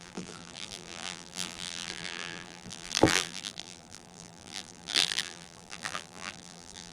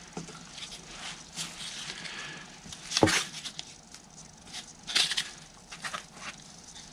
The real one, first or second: second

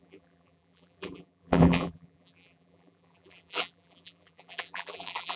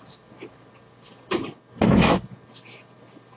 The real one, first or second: second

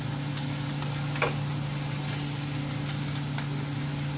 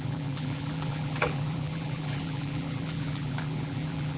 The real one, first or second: first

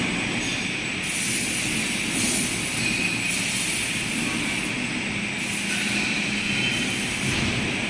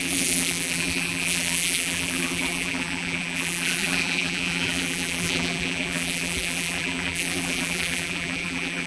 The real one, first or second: first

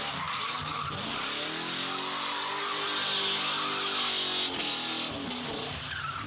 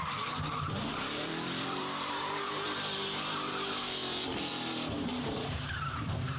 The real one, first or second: first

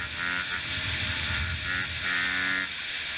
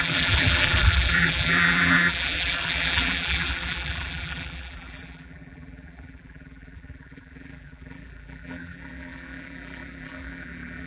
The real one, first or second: first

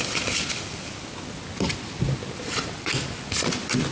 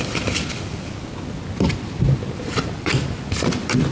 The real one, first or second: first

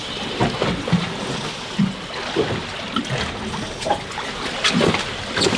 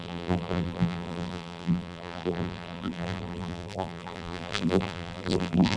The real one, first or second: first